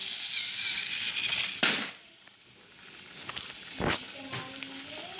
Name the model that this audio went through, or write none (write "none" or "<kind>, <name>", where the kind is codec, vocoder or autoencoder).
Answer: none